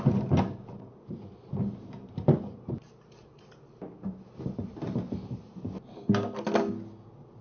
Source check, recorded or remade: recorded